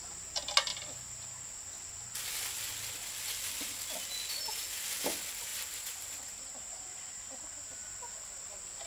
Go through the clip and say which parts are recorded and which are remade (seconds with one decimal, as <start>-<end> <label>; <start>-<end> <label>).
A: 0.0-8.9 recorded